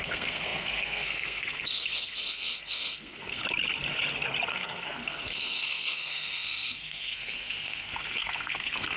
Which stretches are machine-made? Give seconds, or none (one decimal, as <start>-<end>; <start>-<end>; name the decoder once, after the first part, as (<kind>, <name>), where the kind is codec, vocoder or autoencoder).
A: 0.0-3.4 (codec, SNAC); 4.5-9.0